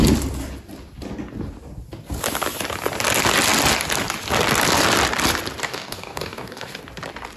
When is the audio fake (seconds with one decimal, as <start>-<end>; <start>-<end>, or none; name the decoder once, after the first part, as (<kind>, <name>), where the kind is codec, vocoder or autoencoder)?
5.6-6.8 (codec, DAC)